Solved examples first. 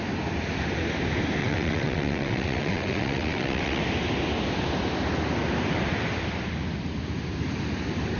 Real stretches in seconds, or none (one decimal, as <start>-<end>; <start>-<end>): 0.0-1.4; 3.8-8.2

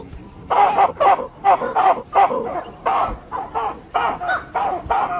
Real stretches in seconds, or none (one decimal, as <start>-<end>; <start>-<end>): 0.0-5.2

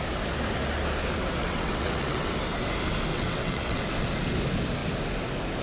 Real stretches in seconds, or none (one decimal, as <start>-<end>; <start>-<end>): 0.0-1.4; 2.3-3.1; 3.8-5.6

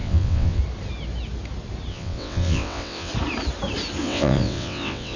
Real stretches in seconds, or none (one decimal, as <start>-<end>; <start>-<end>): 0.6-1.9; 3.1-4.0